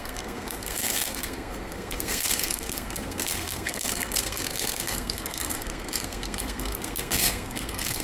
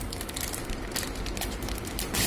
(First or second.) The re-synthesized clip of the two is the first